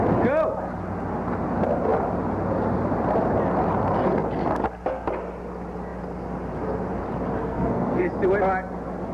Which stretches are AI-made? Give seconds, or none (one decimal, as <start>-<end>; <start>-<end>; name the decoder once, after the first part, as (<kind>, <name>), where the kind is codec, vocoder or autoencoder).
7.4-8.1 (codec, SNAC)